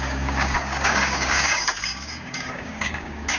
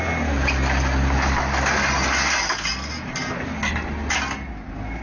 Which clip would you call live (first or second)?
second